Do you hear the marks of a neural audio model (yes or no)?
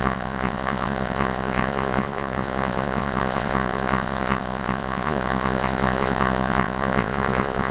yes